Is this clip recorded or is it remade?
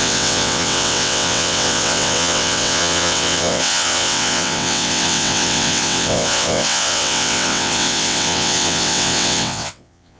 remade